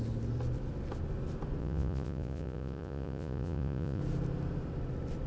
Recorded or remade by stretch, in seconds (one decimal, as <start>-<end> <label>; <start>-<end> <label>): 0.0-1.6 recorded; 1.6-4.0 remade; 4.0-5.3 recorded